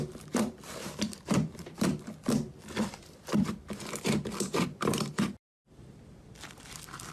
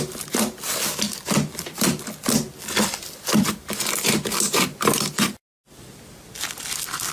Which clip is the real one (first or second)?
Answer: second